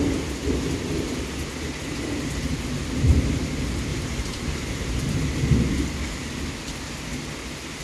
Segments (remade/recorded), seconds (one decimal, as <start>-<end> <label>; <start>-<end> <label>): 0.0-3.9 recorded; 3.9-4.9 remade; 4.9-7.8 recorded